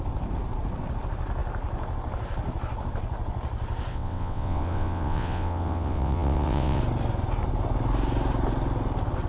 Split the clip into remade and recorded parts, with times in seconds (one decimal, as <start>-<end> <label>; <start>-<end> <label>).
0.0-3.9 recorded; 3.9-6.8 remade; 6.8-9.3 recorded